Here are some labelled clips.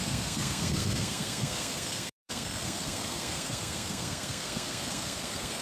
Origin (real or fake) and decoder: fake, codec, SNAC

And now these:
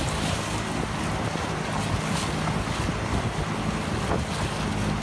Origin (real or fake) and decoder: real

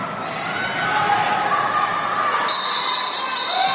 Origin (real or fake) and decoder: real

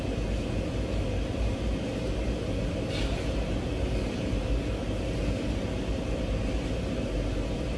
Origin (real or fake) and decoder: real